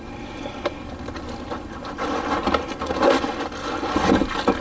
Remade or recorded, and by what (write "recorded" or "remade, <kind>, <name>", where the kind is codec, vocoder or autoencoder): recorded